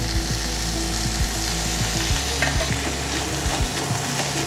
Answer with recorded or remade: recorded